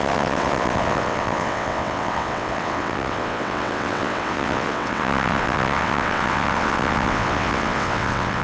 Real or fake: fake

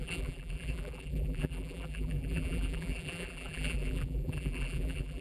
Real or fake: fake